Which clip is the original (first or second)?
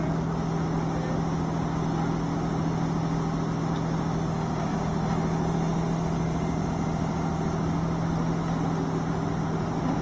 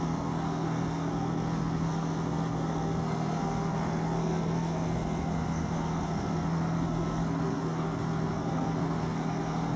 first